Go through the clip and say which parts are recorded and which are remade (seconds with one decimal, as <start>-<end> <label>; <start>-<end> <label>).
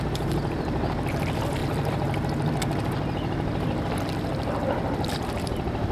0.0-1.6 remade; 1.6-5.1 recorded; 5.1-5.9 remade